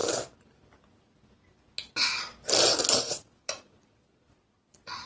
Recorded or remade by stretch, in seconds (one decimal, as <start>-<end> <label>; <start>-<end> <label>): 0.0-3.1 recorded; 3.1-5.1 remade